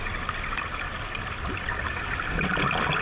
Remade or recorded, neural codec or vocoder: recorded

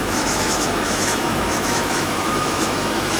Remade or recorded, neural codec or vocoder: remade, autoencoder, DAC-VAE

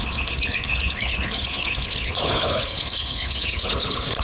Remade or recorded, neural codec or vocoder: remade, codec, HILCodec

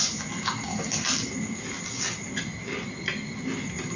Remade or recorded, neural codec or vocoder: recorded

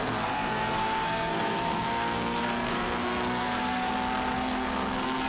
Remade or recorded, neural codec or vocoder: remade, codec, SNAC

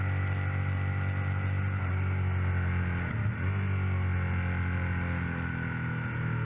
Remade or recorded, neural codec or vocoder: recorded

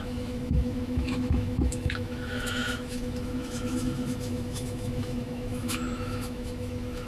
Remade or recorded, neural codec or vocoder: remade, autoencoder, DAC-VAE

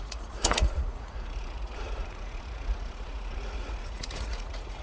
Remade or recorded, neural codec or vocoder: remade, vocoder, Vocos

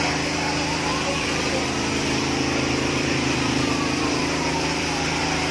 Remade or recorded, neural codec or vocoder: remade, vocoder, BigVGAN v2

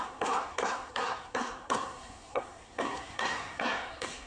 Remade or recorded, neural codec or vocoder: remade, codec, SNAC